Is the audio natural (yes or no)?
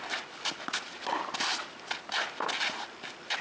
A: yes